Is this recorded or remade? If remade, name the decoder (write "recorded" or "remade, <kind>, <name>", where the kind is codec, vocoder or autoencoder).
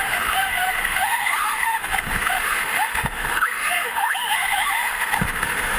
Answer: remade, autoencoder, DAC-VAE